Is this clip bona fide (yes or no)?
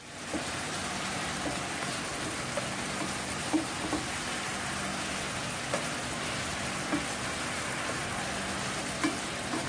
yes